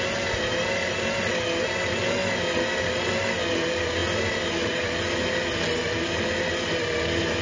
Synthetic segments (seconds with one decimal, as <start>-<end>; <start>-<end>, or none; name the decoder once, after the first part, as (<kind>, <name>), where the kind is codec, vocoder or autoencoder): none